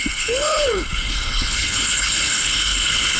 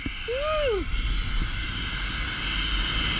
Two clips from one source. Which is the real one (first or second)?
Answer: second